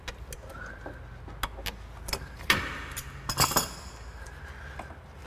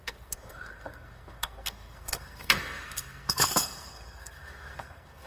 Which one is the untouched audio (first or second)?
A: first